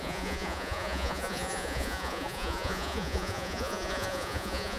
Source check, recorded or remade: remade